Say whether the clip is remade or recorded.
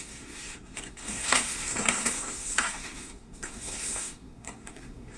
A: remade